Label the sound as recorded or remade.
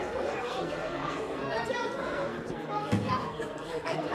remade